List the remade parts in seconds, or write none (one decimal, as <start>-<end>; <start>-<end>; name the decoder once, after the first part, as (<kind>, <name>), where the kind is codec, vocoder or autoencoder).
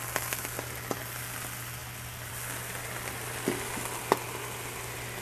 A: none